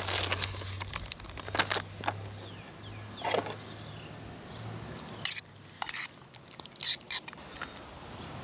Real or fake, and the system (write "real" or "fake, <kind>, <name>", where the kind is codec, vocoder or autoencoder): real